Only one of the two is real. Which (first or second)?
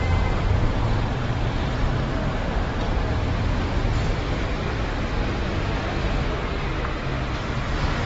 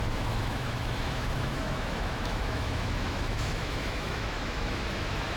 first